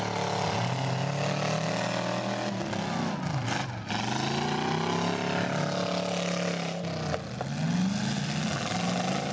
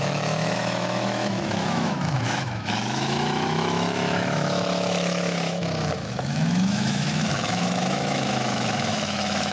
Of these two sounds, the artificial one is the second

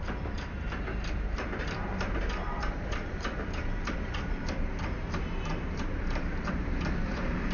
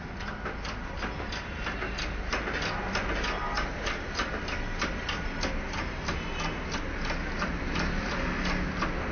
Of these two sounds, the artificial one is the first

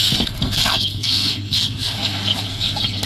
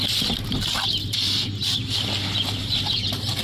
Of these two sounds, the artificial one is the first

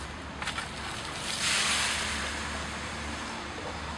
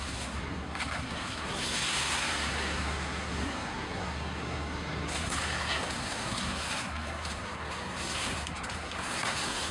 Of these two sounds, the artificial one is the second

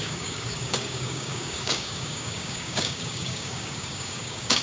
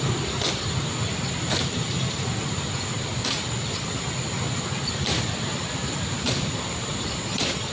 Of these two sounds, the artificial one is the first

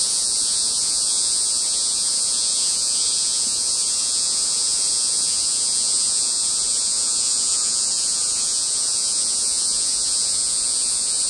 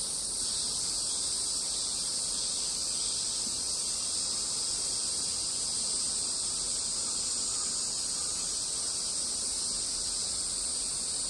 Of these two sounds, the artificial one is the first